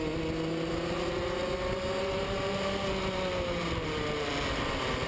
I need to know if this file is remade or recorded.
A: recorded